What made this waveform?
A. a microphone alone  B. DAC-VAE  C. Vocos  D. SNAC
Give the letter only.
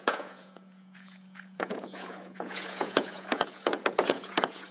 C